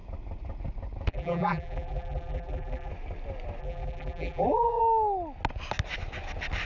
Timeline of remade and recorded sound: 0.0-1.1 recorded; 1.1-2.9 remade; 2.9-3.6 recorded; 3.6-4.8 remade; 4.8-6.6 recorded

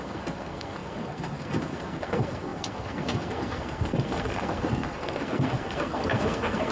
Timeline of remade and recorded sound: 0.0-6.7 remade

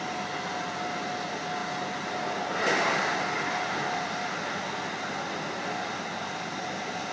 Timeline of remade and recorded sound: 0.0-7.1 recorded

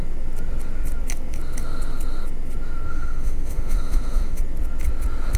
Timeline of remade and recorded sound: 0.0-2.9 recorded; 2.9-4.4 remade; 4.4-5.4 recorded